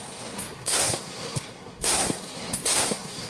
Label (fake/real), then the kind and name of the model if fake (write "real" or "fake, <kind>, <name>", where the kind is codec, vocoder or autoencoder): fake, codec, SNAC